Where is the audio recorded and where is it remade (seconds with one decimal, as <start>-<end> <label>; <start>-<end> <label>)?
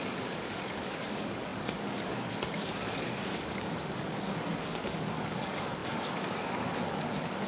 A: 0.0-7.5 remade